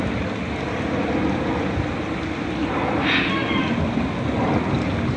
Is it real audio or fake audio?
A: real